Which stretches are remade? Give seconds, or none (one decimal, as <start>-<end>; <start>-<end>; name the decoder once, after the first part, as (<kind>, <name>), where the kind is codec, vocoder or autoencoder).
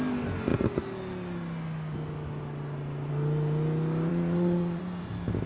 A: 4.1-4.8 (vocoder, Vocos)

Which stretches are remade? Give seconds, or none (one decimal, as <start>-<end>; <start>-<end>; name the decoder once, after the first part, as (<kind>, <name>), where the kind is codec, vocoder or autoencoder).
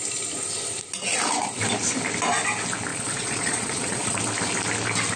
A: 2.9-4.2 (vocoder, Vocos)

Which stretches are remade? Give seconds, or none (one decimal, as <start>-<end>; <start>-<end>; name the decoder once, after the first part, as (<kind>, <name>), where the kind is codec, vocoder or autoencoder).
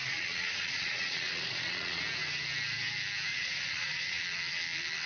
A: 0.0-2.0 (vocoder, Vocos); 3.3-4.2